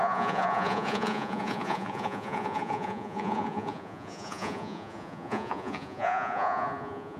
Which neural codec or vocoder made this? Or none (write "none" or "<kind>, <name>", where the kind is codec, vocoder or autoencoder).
vocoder, Vocos